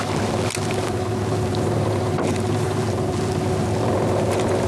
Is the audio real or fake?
real